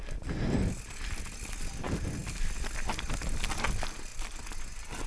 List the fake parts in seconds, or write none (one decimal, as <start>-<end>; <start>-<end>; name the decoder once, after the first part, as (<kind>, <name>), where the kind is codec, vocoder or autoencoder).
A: none